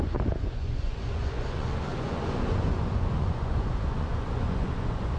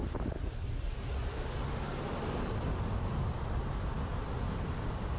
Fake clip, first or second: first